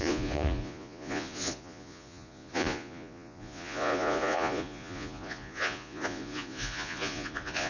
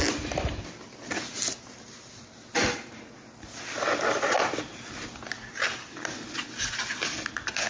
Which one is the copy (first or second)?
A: first